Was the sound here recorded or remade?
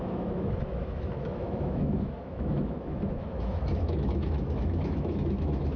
remade